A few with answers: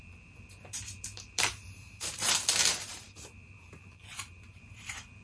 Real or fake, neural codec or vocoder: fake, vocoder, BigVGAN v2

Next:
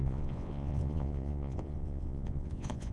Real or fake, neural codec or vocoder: fake, vocoder, Vocos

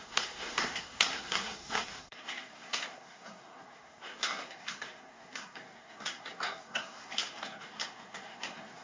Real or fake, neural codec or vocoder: fake, codec, SNAC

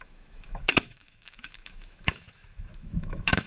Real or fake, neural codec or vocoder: fake, autoencoder, DAC-VAE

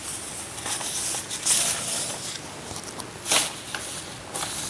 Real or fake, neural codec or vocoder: real